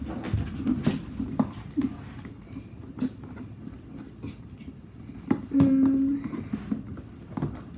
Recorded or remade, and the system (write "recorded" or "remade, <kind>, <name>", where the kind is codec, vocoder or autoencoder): recorded